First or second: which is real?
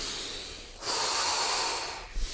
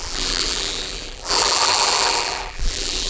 first